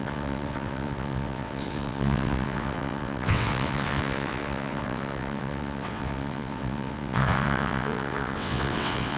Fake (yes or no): yes